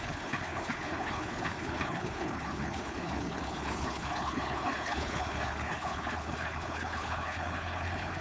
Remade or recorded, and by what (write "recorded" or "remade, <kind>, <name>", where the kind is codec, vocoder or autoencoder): remade, codec, HILCodec